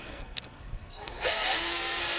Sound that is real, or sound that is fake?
fake